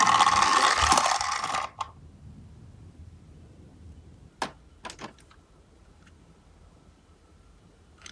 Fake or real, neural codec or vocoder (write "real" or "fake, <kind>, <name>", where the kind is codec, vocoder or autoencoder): real